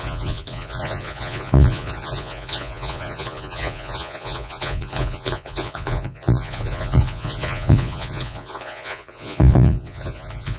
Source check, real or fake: fake